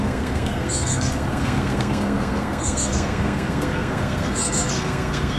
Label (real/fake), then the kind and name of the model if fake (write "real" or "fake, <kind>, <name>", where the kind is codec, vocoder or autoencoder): fake, codec, SNAC